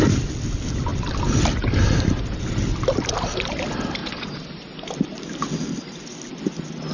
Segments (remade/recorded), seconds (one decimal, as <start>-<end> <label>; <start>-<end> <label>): 0.0-6.9 recorded